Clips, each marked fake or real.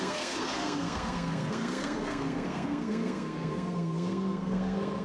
fake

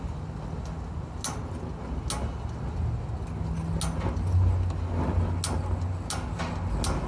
real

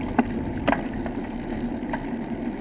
real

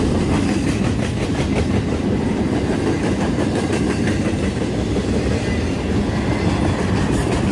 real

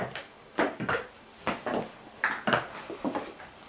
real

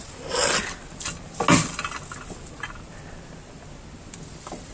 real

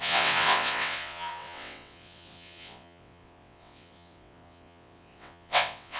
fake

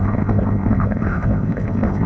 fake